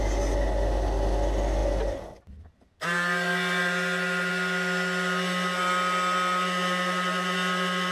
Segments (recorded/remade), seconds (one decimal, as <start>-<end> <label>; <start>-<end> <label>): 0.0-7.9 recorded